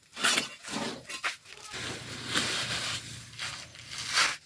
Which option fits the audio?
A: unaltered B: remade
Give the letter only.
A